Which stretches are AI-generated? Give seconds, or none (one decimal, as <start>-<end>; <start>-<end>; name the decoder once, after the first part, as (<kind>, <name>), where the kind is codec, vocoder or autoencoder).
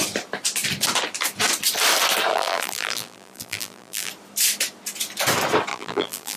2.3-4.1 (vocoder, BigVGAN v2); 5.7-6.4